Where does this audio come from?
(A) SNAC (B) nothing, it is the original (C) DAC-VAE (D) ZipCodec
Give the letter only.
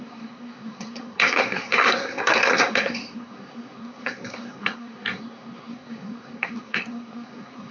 A